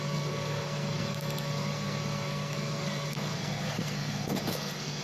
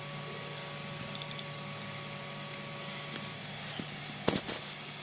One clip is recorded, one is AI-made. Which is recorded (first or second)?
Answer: second